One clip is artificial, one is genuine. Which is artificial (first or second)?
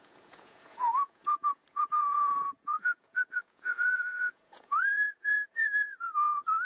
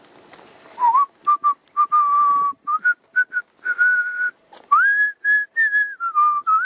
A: first